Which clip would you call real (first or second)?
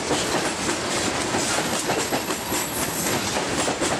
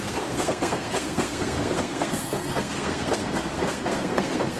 first